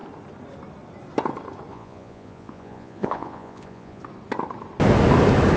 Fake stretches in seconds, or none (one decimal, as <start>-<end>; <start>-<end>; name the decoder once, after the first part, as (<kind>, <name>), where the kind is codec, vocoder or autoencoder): 1.7-4.0 (vocoder, Vocos)